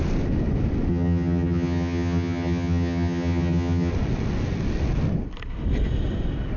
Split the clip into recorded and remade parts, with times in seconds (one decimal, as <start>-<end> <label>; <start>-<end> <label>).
0.0-0.9 recorded; 0.9-3.9 remade; 3.9-6.6 recorded